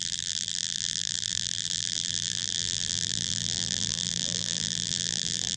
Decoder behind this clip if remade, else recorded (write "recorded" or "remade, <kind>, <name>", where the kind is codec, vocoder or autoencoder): remade, vocoder, BigVGAN v2